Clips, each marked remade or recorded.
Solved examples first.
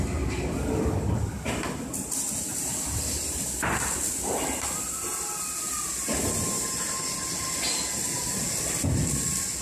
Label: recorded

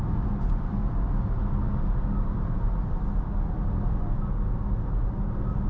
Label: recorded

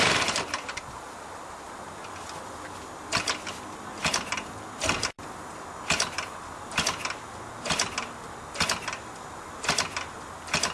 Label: recorded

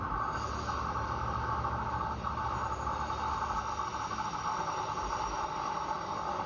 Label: recorded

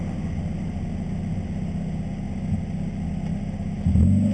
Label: recorded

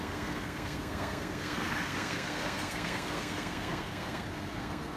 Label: remade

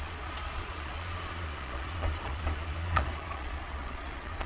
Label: remade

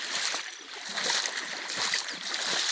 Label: recorded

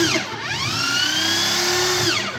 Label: recorded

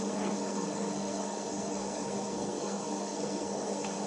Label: remade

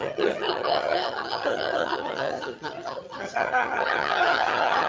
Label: remade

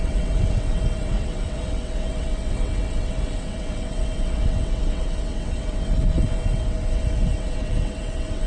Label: remade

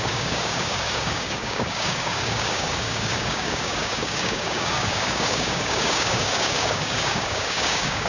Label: remade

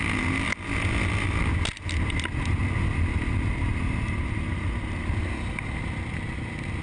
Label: recorded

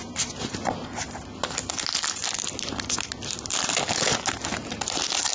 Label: recorded